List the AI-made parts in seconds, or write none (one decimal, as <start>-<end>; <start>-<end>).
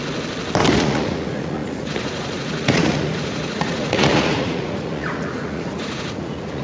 0.8-6.6